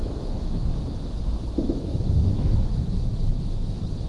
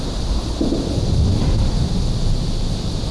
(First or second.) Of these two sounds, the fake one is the first